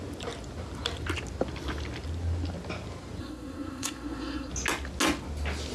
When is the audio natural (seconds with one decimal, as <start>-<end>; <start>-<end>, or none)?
0.0-3.2; 4.5-5.7